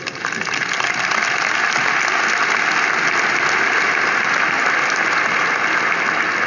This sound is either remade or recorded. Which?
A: recorded